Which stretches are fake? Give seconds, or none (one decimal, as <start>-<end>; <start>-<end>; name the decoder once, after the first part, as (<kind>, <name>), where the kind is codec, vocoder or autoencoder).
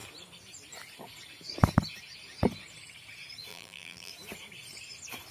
3.5-4.1 (vocoder, BigVGAN v2)